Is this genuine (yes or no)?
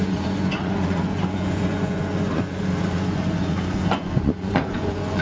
no